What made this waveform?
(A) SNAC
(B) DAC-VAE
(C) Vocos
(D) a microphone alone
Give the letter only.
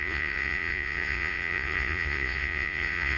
C